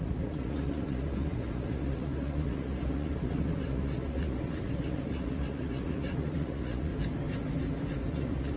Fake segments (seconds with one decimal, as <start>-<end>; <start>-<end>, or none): 0.0-6.9; 8.1-8.6